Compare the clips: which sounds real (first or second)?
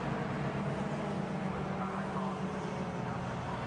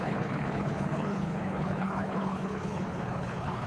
first